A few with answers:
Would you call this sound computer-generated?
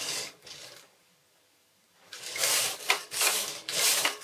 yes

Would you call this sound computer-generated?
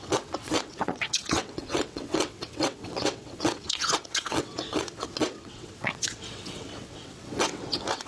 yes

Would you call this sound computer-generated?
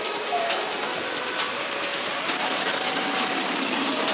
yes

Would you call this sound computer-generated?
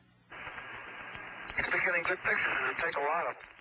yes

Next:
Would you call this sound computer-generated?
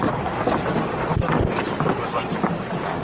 no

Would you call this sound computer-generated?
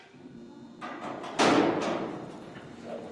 no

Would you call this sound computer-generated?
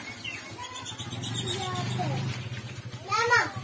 no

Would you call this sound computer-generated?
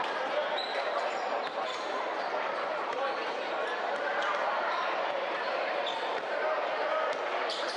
yes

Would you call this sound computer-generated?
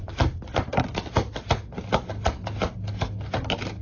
no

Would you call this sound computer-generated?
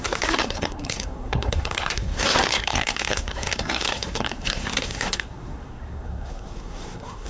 yes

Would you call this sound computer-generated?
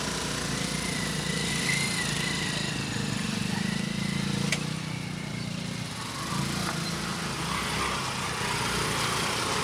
no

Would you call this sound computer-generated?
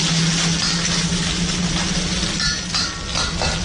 no